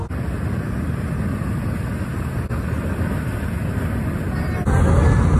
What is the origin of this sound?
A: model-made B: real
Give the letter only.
B